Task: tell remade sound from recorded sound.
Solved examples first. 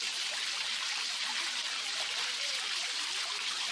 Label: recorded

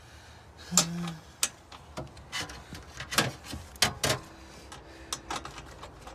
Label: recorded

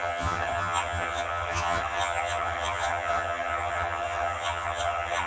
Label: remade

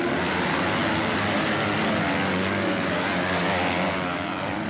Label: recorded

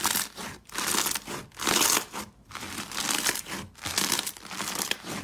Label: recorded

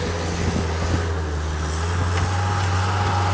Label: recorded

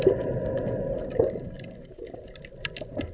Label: recorded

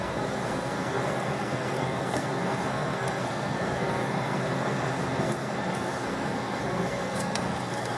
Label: remade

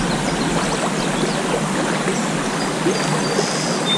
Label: recorded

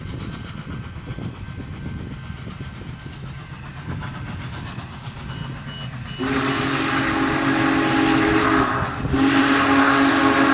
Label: recorded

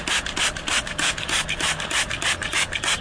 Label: recorded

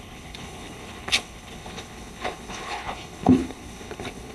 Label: remade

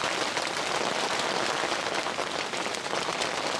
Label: recorded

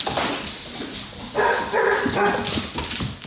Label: recorded